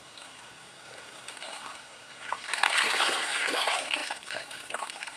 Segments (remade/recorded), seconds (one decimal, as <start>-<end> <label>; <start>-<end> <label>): 0.0-5.2 remade